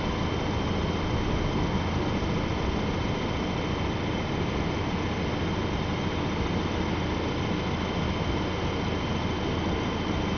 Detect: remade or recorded recorded